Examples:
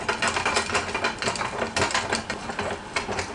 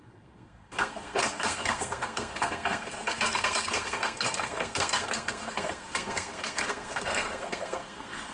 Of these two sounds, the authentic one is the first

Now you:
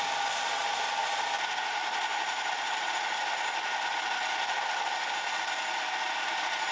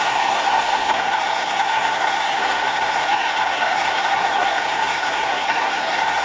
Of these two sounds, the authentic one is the first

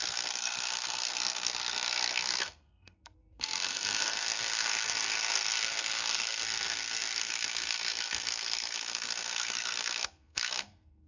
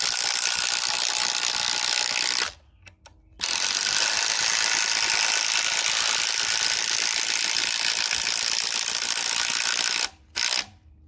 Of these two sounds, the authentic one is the second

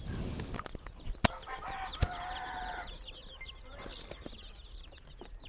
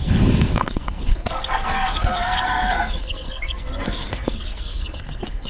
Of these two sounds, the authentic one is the first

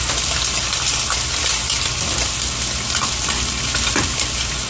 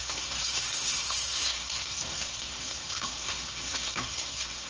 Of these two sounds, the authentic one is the first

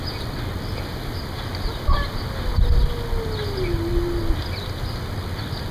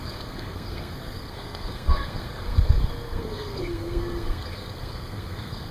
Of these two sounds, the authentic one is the first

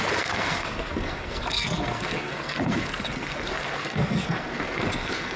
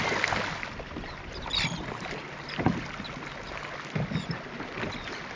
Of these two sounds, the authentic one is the second